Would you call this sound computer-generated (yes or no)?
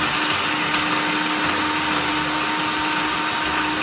no